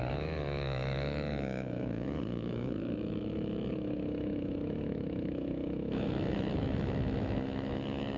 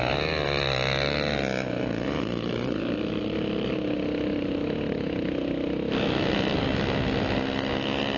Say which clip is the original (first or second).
second